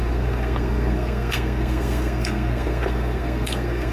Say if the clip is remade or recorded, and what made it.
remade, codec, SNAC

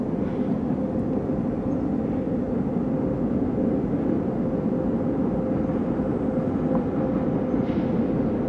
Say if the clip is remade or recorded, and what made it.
recorded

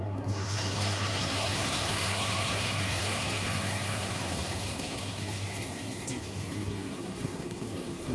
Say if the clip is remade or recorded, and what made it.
remade, codec, SNAC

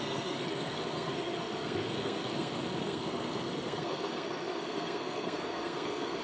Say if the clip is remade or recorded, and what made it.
remade, codec, SNAC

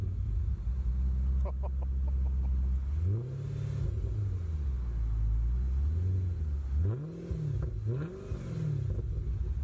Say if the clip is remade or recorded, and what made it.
recorded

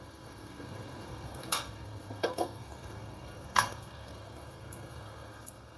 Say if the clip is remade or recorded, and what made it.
remade, codec, SNAC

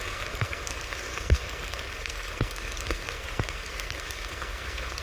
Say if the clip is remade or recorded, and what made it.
remade, codec, SNAC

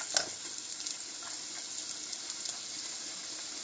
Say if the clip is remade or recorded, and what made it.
recorded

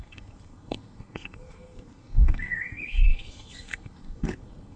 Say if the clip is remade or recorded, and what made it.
remade, codec, SNAC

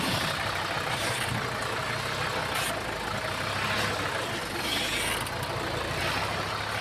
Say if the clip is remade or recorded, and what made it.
recorded